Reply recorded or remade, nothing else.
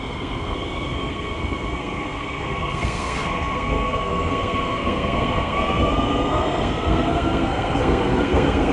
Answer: remade